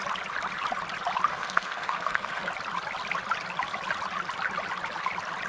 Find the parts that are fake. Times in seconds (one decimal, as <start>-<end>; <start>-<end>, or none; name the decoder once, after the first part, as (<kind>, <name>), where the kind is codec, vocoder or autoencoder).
1.3-2.5 (codec, SNAC)